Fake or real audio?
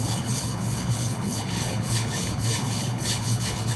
fake